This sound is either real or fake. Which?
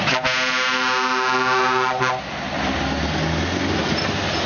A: real